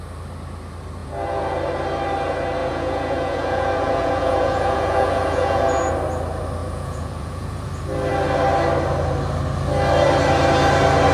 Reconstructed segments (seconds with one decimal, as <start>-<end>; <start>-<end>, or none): 1.0-1.6; 2.6-5.9; 6.6-7.7

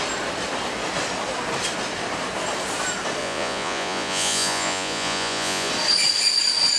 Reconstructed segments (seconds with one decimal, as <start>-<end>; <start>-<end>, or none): 3.2-5.7

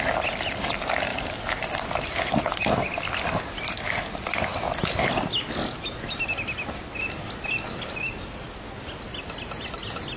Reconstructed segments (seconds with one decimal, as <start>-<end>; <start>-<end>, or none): none